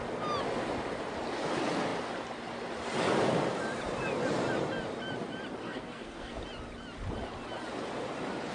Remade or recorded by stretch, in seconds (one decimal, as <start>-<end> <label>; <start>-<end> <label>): 0.0-5.6 recorded; 5.6-6.4 remade; 6.4-8.5 recorded